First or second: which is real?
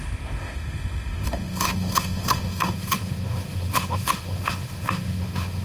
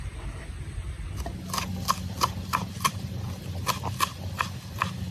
second